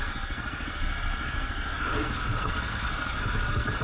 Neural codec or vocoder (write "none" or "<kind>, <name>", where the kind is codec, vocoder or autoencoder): codec, SNAC